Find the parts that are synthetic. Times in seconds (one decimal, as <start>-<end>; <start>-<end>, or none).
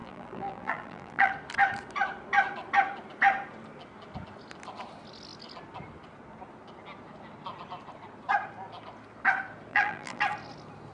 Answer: 0.0-1.3; 9.7-10.2